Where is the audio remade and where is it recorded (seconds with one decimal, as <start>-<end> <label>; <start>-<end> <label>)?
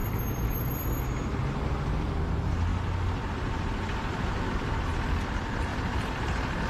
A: 0.0-1.0 remade; 1.0-5.7 recorded; 5.7-6.7 remade